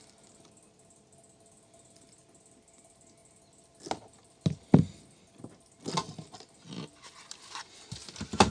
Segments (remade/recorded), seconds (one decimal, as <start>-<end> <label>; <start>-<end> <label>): 0.0-8.5 recorded